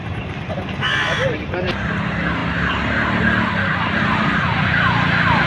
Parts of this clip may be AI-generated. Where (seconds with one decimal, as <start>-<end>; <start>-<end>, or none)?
none